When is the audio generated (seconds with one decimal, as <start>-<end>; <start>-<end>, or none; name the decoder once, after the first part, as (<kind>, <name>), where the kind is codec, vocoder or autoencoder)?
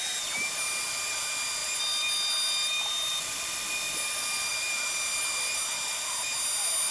none